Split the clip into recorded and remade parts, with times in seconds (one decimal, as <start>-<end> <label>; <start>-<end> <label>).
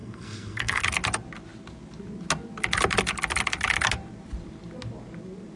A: 0.0-0.8 remade; 0.8-5.6 recorded